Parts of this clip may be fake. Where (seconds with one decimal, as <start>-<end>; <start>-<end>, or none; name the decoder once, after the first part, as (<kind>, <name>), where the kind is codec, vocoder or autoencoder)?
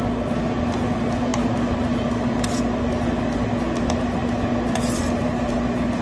none